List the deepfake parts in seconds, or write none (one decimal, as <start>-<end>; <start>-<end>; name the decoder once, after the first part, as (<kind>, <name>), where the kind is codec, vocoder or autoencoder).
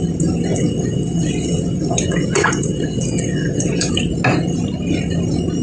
0.5-3.9 (vocoder, WaveNeXt)